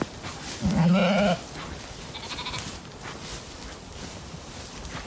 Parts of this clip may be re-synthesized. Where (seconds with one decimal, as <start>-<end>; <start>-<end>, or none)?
none